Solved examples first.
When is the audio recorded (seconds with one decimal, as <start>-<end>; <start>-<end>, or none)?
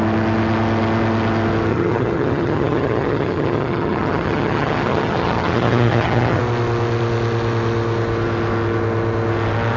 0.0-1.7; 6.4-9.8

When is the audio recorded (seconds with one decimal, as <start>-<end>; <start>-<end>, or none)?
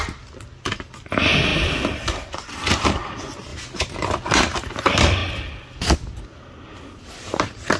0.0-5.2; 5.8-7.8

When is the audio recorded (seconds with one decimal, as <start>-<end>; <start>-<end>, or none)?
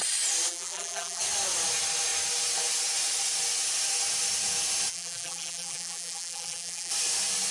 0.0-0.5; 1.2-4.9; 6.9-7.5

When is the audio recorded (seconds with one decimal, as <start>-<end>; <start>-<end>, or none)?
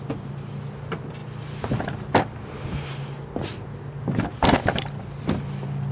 0.0-5.9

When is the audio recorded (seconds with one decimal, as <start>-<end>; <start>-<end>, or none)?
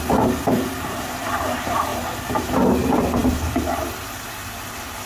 0.0-5.1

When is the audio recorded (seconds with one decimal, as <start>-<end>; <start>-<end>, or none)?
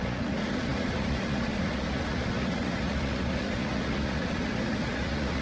none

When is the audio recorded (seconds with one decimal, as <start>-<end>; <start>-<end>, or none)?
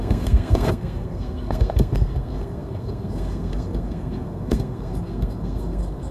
none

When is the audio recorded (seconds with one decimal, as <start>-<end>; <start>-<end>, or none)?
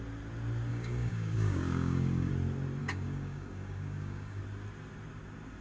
0.0-0.7; 2.3-2.8; 4.4-5.6